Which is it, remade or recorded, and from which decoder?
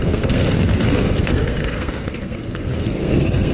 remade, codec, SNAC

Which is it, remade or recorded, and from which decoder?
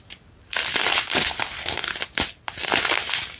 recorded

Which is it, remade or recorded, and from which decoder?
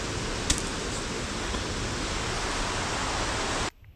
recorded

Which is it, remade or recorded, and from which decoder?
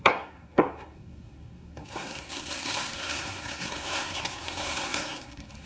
remade, codec, SNAC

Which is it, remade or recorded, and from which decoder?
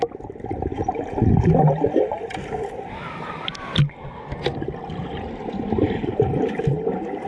recorded